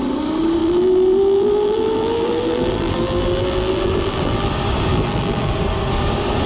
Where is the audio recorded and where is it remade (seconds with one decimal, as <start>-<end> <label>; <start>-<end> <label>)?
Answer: 0.0-0.6 recorded; 0.6-4.5 remade; 4.5-4.9 recorded; 4.9-5.5 remade; 5.5-6.5 recorded

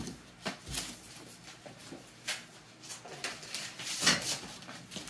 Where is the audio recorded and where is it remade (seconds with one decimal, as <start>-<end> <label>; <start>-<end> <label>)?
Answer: 0.0-5.1 recorded

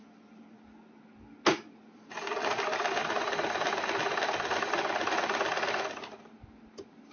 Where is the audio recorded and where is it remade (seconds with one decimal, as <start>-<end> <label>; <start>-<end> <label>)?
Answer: 0.0-7.1 recorded

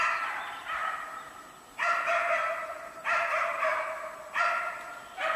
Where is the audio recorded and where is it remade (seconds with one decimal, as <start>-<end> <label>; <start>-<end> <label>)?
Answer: 0.0-0.8 remade; 0.8-2.4 recorded; 2.4-3.7 remade; 3.7-5.4 recorded

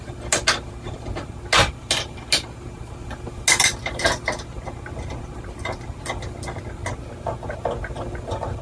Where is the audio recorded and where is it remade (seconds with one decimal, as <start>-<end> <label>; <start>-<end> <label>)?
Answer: 0.0-8.6 recorded

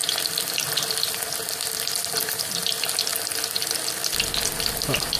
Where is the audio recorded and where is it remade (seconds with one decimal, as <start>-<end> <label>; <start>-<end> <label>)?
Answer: 0.0-3.1 remade; 3.1-4.6 recorded; 4.6-5.2 remade